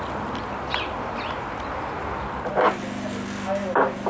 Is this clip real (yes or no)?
yes